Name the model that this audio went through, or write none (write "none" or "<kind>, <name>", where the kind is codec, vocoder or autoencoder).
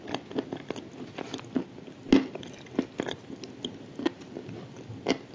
none